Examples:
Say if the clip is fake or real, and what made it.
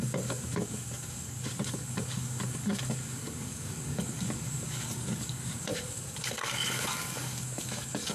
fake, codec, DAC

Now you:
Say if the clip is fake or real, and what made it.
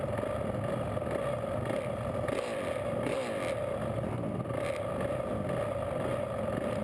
real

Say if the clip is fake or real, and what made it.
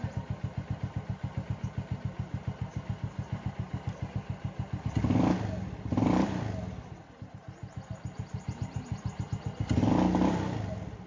real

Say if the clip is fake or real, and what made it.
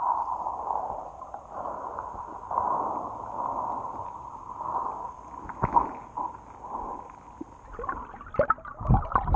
real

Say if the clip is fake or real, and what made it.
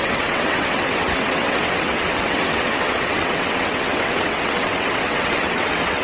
fake, vocoder, WaveNeXt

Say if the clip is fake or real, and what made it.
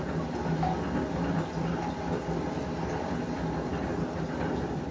real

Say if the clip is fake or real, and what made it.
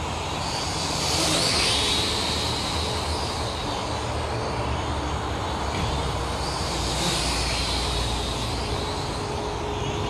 real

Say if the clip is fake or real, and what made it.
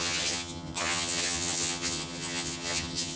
fake, vocoder, HiFi-GAN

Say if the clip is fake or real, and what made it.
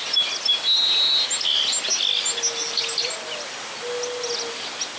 real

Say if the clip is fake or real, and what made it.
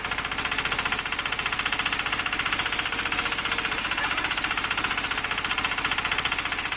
real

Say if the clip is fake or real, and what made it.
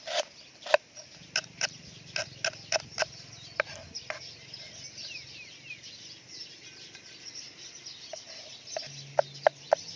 real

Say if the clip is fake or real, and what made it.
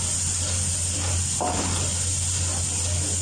real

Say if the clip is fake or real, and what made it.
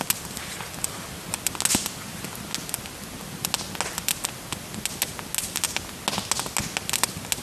real